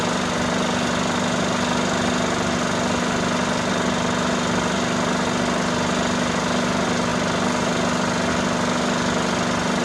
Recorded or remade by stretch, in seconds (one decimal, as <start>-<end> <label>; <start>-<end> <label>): 0.0-9.8 recorded